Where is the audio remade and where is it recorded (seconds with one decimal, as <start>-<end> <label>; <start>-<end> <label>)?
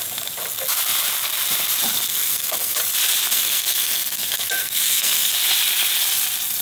0.0-2.1 recorded; 2.1-2.8 remade; 2.8-3.3 recorded; 3.3-5.3 remade; 5.3-6.6 recorded